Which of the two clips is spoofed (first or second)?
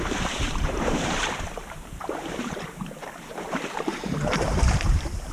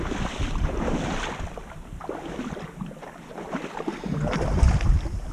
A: first